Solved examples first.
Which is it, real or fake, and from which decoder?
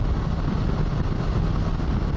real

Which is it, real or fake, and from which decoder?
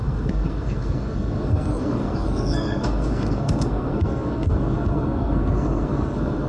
fake, codec, SNAC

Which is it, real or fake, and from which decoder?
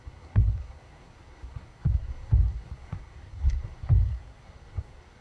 fake, codec, SNAC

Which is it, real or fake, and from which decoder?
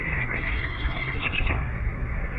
fake, codec, SNAC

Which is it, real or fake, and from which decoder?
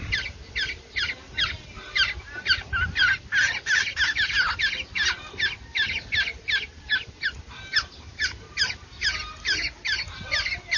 real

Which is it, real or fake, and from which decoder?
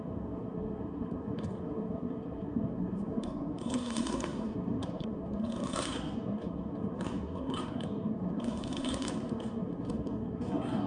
fake, codec, SNAC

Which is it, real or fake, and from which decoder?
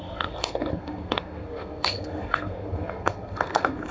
fake, codec, SNAC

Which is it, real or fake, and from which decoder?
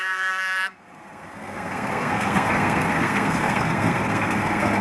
fake, codec, SNAC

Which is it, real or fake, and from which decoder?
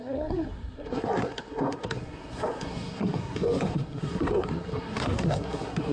fake, codec, SNAC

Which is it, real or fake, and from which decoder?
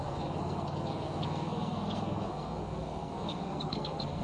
fake, codec, SNAC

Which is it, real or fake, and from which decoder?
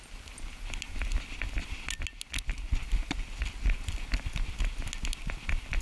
real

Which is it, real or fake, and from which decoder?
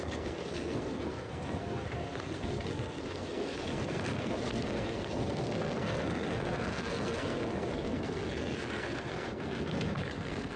fake, codec, SNAC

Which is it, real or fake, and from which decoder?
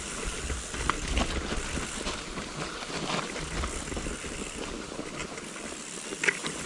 real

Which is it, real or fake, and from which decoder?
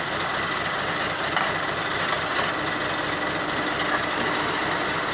real